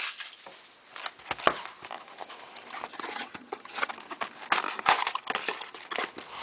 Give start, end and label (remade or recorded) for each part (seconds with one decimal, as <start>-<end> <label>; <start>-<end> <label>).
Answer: 0.0-2.9 recorded; 2.9-3.9 remade; 3.9-6.4 recorded